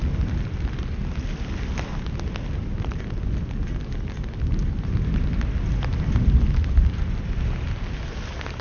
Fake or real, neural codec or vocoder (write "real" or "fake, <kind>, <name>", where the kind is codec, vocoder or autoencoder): real